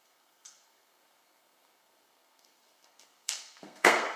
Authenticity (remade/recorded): remade